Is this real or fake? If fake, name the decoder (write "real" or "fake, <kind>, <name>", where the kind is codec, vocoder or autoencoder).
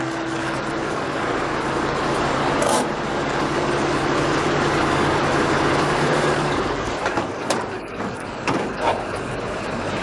fake, codec, DAC